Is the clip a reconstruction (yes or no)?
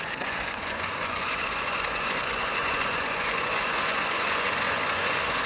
yes